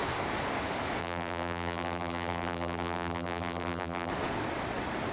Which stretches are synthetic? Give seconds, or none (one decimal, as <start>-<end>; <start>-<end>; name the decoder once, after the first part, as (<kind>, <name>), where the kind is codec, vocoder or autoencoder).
1.0-4.1 (vocoder, BigVGAN v2)

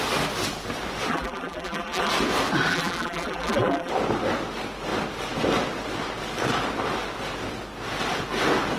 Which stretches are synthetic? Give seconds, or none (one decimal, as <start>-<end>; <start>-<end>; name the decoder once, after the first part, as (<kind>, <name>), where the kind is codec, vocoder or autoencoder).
1.1-2.1 (vocoder, BigVGAN v2); 2.7-3.9

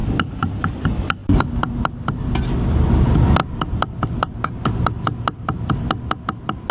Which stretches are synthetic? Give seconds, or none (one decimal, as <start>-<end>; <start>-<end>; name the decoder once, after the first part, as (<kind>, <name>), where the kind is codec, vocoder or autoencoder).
none

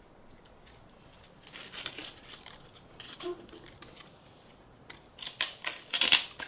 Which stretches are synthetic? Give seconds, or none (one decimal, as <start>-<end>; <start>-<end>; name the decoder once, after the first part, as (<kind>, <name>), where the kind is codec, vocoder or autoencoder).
2.0-5.9 (vocoder, BigVGAN v2)